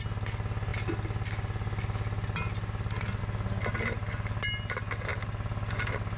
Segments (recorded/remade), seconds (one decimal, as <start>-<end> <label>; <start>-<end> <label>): 0.0-6.2 recorded